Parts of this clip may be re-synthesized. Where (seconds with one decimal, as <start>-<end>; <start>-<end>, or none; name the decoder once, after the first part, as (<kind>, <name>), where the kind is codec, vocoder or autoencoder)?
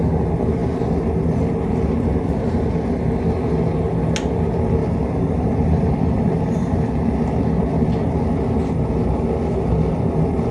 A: 4.8-6.7 (vocoder, BigVGAN v2)